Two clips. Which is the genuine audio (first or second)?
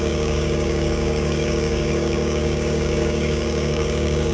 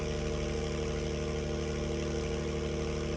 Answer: second